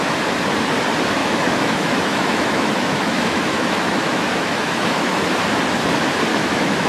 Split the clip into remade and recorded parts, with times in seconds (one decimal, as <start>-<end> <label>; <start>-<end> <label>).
0.0-1.2 recorded; 1.2-5.3 remade; 5.3-6.3 recorded; 6.3-6.9 remade